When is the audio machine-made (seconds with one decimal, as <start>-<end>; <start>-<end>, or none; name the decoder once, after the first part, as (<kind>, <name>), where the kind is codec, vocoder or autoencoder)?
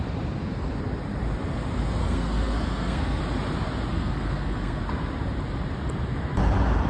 2.0-3.2 (codec, SNAC); 3.9-4.8